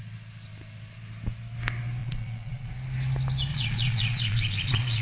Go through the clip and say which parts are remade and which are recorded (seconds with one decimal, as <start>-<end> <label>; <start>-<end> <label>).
0.0-2.0 recorded; 2.0-2.7 remade; 2.7-3.5 recorded; 3.5-5.0 remade